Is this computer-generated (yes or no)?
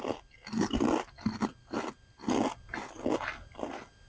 no